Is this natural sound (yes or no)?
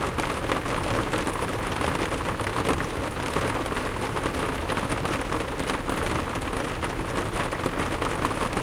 yes